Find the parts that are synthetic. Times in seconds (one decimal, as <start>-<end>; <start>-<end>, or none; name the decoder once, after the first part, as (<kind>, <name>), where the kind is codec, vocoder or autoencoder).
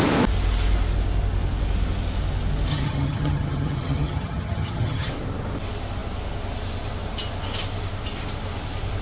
2.7-5.1 (vocoder, HiFi-GAN)